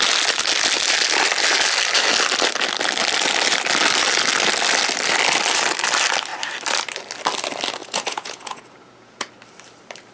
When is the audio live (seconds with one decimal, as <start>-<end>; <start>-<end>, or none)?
0.0-7.8; 9.3-10.1